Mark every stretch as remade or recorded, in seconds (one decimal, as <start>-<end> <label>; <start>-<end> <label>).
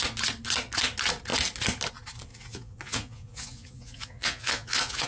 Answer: 0.0-2.3 recorded; 2.3-5.1 remade